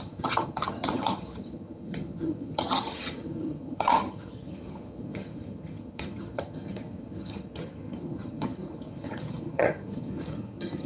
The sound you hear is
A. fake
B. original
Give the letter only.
A